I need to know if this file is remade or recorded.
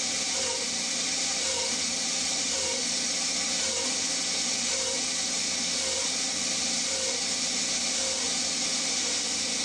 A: recorded